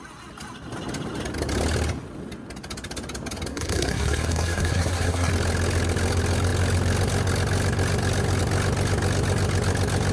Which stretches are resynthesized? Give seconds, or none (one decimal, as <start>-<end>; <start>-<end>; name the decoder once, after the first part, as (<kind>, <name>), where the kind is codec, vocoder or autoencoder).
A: 3.5-5.3 (codec, SNAC)